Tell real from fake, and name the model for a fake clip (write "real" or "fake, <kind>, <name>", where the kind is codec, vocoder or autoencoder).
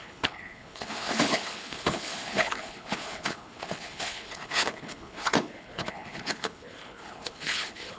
fake, codec, HILCodec